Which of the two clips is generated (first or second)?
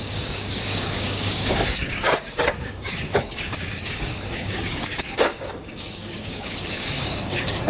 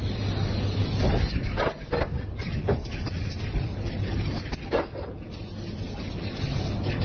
first